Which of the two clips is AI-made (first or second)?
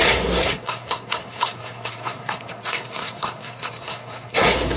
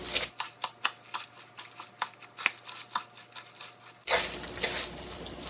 first